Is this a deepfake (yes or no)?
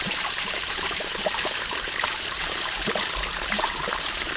yes